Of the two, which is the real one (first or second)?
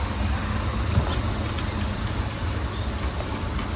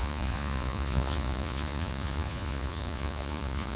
first